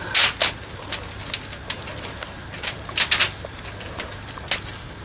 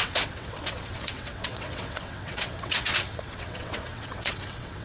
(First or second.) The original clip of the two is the first